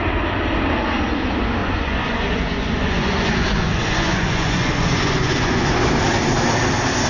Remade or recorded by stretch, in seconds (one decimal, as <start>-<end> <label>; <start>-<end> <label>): 0.0-1.6 recorded; 1.6-5.9 remade; 5.9-7.1 recorded